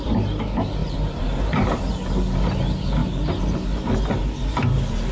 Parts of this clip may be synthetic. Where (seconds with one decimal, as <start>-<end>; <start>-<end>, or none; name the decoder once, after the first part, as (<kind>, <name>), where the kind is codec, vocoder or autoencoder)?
0.8-1.8 (vocoder, BigVGAN v2)